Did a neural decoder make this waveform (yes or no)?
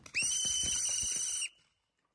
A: no